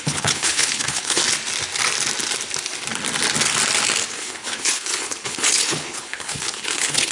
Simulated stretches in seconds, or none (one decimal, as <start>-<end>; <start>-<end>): 0.0-1.2; 4.1-7.1

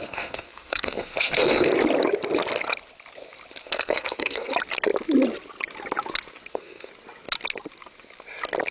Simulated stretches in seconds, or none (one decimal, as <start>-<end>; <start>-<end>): 0.0-1.7; 3.6-4.5; 6.5-6.9